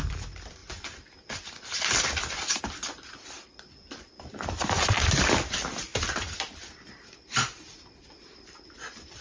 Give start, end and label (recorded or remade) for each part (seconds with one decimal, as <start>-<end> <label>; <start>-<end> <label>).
0.0-9.2 remade